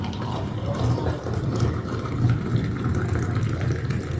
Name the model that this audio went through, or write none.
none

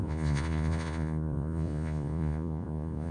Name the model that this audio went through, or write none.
vocoder, Vocos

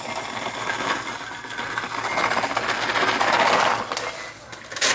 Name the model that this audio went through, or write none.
none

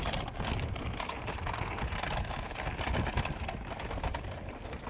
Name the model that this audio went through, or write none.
none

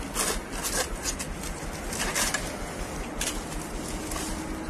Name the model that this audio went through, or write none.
none